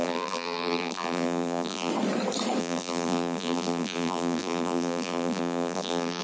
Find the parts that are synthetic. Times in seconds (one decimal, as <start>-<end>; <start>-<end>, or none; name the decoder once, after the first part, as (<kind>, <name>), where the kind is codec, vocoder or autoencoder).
0.0-1.9 (vocoder, BigVGAN v2); 2.6-6.2